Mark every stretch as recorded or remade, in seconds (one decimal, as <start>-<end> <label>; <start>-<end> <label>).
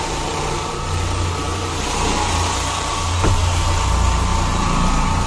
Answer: 0.0-4.3 remade; 4.3-5.3 recorded